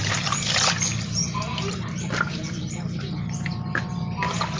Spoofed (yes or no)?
no